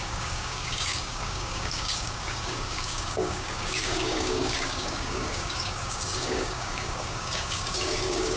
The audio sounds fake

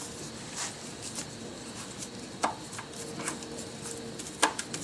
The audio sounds real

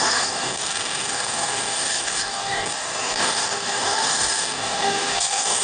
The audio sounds fake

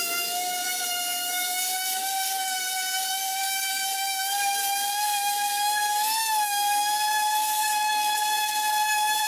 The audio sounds fake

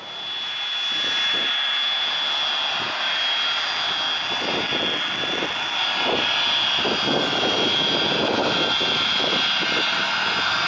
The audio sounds real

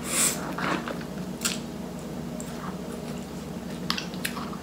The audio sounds real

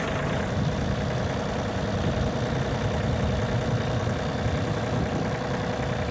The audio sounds real